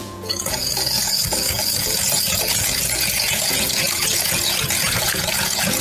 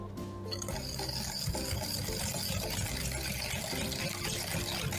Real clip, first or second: second